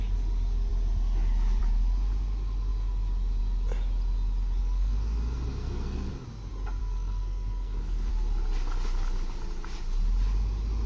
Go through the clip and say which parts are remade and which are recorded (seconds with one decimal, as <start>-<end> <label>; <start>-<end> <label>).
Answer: 0.0-4.6 recorded; 4.6-6.1 remade; 6.1-6.8 recorded; 6.8-8.1 remade; 8.1-10.9 recorded